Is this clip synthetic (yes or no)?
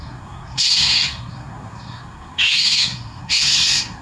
yes